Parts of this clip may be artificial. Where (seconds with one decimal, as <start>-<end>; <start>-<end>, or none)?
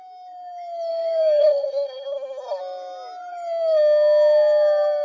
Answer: 1.4-2.6